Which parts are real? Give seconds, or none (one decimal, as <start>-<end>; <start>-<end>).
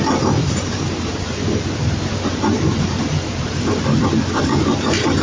0.0-0.4; 3.5-5.2